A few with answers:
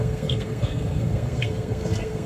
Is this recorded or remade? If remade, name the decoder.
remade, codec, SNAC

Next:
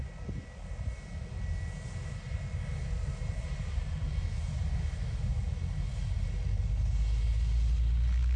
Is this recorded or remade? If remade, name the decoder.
recorded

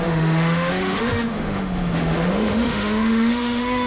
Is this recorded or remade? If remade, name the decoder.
remade, autoencoder, DAC-VAE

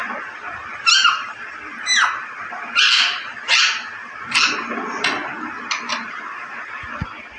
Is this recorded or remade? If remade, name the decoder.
recorded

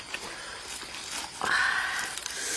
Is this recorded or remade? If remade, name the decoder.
remade, vocoder, BigVGAN v2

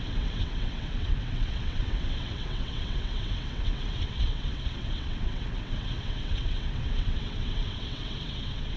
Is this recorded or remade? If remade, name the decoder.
remade, vocoder, WaveNeXt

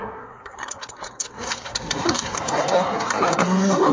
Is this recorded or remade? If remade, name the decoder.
remade, codec, SNAC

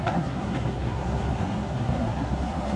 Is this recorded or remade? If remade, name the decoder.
remade, codec, SNAC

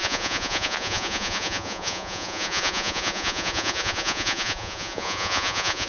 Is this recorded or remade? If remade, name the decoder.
remade, vocoder, Vocos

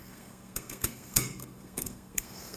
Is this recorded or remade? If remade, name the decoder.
remade, codec, SNAC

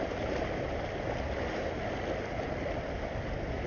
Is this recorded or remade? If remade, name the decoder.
recorded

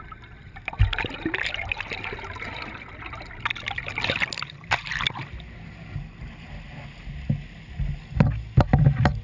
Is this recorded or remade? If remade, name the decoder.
recorded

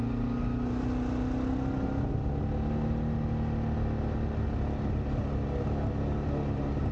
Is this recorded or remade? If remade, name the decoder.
recorded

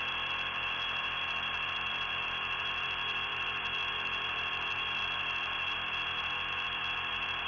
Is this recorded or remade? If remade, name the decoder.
recorded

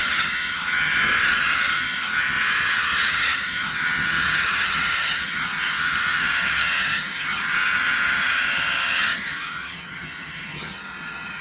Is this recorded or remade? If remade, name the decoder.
remade, vocoder, HiFi-GAN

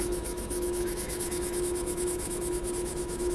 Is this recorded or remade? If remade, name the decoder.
remade, autoencoder, DAC-VAE